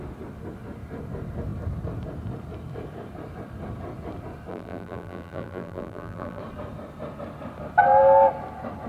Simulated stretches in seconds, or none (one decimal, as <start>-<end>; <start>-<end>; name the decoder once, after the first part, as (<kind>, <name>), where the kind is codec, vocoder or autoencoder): 4.5-6.4 (vocoder, BigVGAN v2)